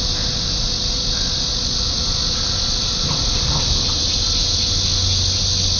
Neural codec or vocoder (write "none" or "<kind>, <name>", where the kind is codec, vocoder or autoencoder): none